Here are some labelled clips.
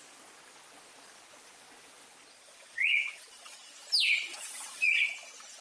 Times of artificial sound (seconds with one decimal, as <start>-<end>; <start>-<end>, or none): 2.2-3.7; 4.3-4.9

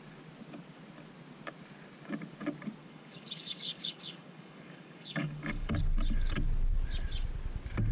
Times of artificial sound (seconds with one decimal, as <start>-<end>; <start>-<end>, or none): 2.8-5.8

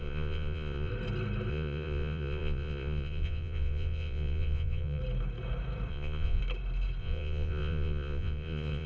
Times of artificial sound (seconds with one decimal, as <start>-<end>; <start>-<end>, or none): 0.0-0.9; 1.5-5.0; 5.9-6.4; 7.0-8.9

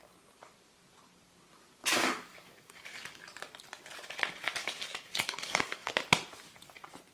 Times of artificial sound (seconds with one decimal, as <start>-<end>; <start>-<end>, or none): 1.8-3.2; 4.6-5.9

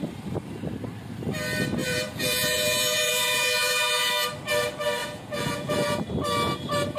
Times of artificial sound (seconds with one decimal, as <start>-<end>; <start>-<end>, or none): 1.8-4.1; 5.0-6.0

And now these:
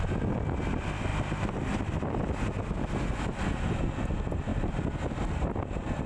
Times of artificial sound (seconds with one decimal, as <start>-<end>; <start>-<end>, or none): none

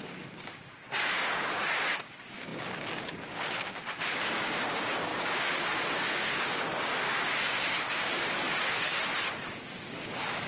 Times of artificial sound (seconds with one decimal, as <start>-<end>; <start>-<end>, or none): 0.0-8.9; 9.4-10.5

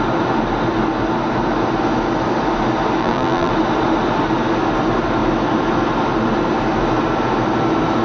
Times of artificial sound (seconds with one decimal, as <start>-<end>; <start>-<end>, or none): 3.0-3.5